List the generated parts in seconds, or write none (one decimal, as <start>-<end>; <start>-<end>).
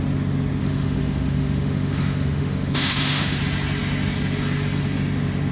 0.6-3.4